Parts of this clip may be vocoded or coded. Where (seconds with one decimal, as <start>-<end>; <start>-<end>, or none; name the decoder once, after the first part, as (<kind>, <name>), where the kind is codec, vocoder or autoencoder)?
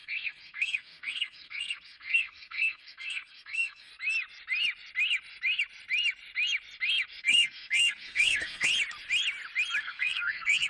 0.0-3.9 (codec, SNAC); 7.2-8.7; 9.8-10.7